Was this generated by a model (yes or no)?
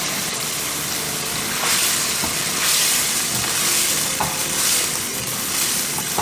no